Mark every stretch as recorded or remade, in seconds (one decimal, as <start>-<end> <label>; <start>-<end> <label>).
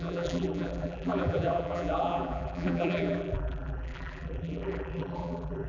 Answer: 0.0-5.7 remade